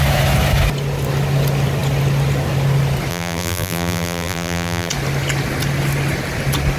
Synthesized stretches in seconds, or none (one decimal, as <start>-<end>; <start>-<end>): 3.1-4.9